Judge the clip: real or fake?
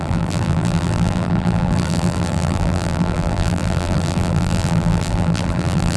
fake